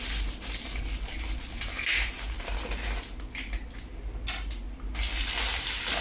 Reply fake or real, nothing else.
real